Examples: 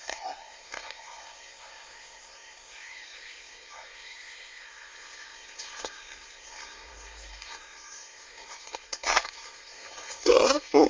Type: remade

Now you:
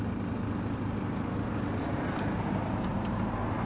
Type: recorded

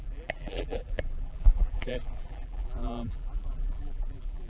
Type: remade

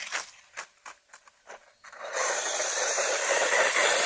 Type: recorded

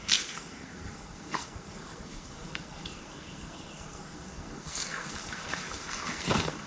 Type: remade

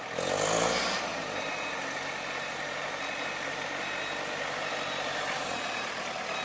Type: recorded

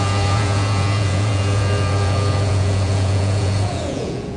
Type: remade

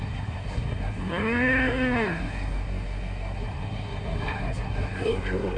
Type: remade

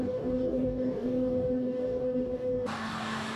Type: remade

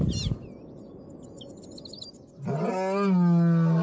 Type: recorded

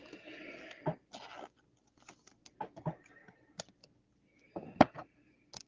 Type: recorded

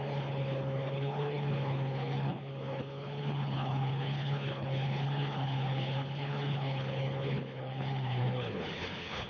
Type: remade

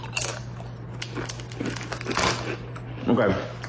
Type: recorded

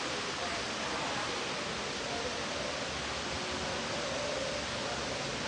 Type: recorded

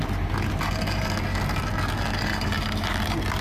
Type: recorded